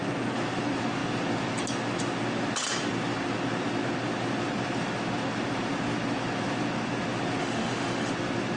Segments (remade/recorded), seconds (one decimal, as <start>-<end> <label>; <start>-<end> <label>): 0.0-7.4 recorded; 7.4-8.1 remade; 8.1-8.6 recorded